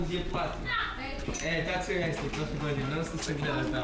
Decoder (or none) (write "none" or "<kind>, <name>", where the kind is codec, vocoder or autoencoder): none